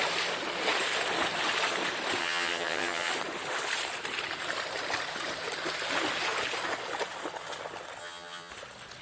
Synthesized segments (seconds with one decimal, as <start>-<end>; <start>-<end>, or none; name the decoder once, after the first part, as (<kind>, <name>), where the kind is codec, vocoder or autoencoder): 2.2-3.1 (vocoder, HiFi-GAN); 8.0-8.5